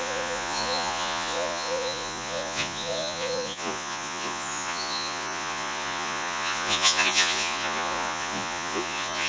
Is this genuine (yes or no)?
no